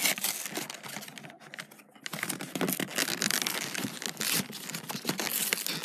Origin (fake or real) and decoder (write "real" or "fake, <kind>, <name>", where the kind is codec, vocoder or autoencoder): real